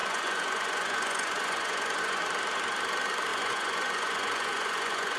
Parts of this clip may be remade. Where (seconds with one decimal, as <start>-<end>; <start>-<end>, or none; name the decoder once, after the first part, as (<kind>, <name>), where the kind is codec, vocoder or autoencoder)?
0.0-2.2 (vocoder, Vocos); 3.3-5.2